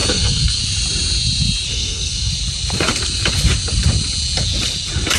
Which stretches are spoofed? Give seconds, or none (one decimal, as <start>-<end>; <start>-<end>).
0.0-0.6; 1.7-2.3